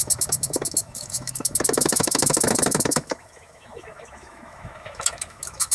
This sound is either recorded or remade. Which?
remade